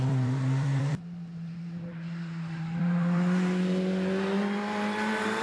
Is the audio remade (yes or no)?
yes